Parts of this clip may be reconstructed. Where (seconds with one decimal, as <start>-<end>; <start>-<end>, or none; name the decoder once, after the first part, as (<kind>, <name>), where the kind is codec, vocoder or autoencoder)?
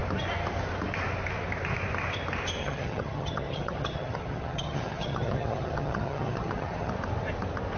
2.6-6.9 (vocoder, HiFi-GAN)